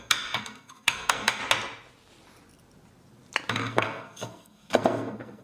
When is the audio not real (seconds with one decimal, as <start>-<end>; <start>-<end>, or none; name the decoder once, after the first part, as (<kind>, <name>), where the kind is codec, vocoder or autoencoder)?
0.0-1.4 (codec, SNAC); 3.5-5.4